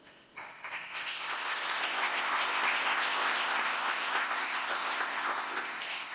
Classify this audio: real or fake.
fake